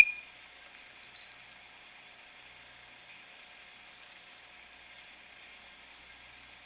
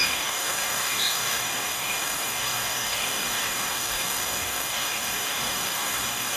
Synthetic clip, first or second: second